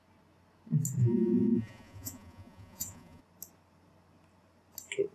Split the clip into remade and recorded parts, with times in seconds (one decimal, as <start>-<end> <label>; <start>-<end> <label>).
0.0-1.0 recorded; 1.0-3.2 remade; 3.2-5.1 recorded